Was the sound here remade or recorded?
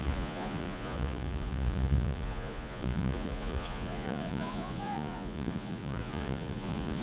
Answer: remade